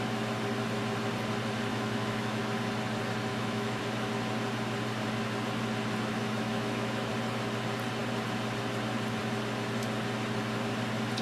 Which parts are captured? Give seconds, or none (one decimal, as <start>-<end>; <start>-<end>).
0.0-1.7; 2.4-3.3; 3.8-6.1; 7.1-11.2